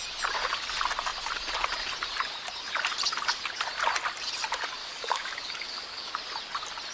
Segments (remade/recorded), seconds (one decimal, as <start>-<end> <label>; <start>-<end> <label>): 0.0-4.8 recorded; 4.8-6.1 remade; 6.1-6.9 recorded